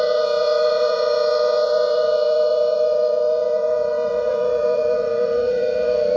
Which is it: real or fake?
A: fake